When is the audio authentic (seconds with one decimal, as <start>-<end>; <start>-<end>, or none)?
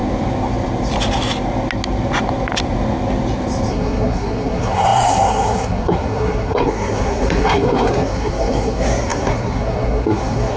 0.0-3.7